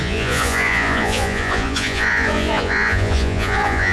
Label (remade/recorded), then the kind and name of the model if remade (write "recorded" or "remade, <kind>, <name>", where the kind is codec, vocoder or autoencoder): remade, vocoder, Vocos